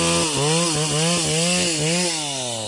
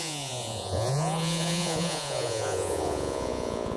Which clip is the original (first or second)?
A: first